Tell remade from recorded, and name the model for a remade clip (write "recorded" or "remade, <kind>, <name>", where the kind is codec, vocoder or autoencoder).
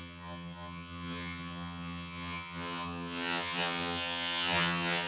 remade, vocoder, HiFi-GAN